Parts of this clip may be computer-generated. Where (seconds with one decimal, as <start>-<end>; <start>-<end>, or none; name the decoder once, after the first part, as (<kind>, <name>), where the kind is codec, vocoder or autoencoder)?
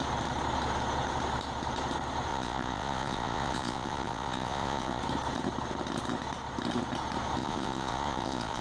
2.3-5.0 (vocoder, Vocos); 7.4-8.6